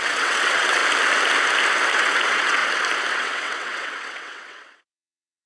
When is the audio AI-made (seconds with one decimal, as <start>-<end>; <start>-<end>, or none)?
0.0-0.8; 2.0-2.6; 3.1-5.5